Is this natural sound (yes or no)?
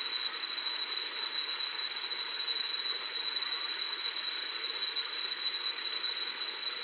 no